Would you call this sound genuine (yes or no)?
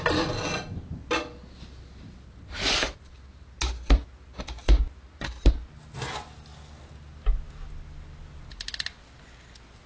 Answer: yes